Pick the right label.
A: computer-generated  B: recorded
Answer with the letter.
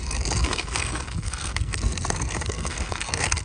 A